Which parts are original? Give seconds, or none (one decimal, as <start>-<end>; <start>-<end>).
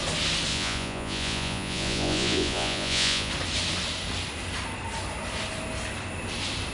0.0-0.5; 3.3-6.7